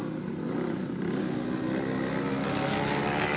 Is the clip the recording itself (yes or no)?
yes